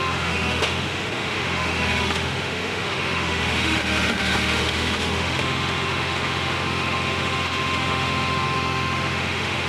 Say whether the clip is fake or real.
fake